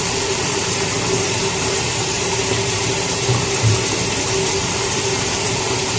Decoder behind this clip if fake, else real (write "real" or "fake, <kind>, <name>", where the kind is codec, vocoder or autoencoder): fake, vocoder, BigVGAN v2